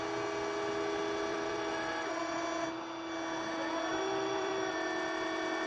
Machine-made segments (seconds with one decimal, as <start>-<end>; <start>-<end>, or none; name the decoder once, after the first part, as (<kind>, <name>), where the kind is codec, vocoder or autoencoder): 1.3-2.4 (vocoder, BigVGAN v2); 3.9-4.7